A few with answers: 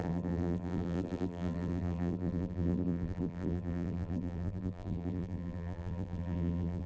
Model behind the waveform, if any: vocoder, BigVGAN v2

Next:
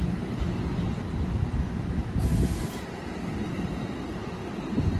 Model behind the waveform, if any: none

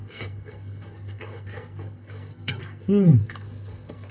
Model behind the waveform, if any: codec, SNAC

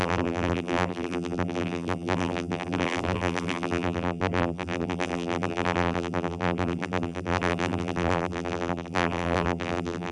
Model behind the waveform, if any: vocoder, BigVGAN v2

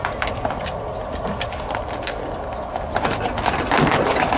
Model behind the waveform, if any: none